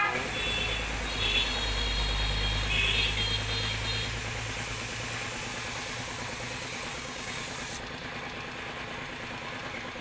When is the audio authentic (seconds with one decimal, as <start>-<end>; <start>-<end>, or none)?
0.0-6.9; 7.4-10.0